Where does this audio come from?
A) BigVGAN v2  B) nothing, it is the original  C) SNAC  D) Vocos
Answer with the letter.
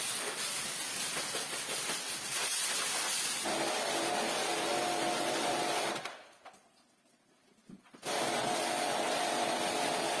B